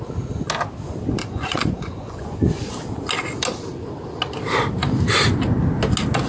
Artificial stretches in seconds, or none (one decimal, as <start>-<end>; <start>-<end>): 1.2-2.7